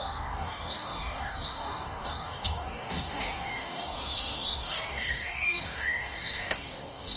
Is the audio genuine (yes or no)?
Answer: no